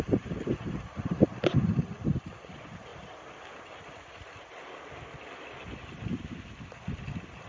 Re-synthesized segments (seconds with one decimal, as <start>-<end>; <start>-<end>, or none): none